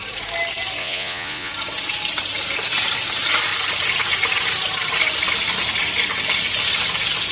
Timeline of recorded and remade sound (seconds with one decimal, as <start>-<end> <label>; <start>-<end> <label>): 0.0-0.8 recorded; 0.8-1.5 remade; 1.5-7.3 recorded